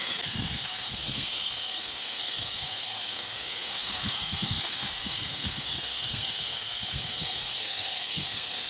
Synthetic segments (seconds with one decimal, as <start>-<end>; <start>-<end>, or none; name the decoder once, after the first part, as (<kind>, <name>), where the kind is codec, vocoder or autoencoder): 0.0-8.7 (codec, SNAC)